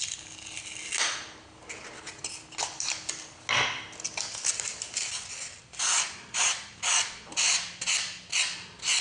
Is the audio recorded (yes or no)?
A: yes